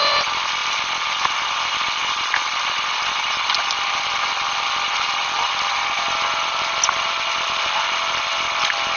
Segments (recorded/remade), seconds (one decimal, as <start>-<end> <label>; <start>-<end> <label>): 0.0-9.0 recorded